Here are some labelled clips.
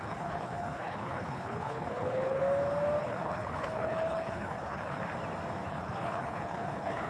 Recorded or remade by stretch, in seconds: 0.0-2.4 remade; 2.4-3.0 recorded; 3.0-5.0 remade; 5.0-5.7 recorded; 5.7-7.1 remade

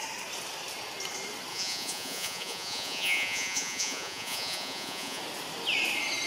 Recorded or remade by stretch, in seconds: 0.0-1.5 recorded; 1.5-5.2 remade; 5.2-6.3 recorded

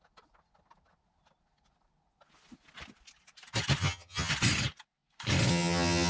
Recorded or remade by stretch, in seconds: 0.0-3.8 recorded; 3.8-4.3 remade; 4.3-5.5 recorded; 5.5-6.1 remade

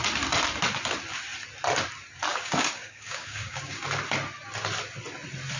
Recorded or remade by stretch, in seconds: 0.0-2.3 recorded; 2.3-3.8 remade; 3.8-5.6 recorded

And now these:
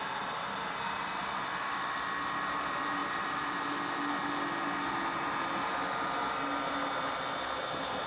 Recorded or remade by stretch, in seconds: 0.0-8.1 recorded

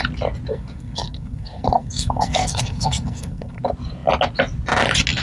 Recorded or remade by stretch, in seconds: 0.0-0.5 recorded; 0.5-3.6 remade; 3.6-5.2 recorded